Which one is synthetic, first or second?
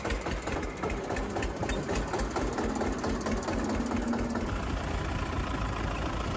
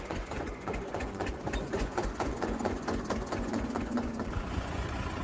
second